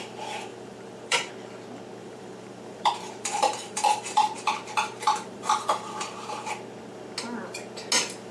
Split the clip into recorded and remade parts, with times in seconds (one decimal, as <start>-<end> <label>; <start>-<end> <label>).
0.0-0.5 recorded; 0.5-1.3 remade; 1.3-2.0 recorded; 2.0-6.5 remade; 6.5-8.3 recorded